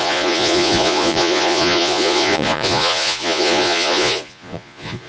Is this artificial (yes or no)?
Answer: yes